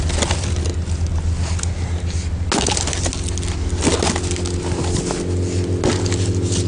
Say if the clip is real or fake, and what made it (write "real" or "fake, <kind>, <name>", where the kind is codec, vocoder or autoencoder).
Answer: real